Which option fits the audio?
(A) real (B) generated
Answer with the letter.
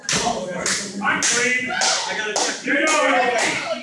A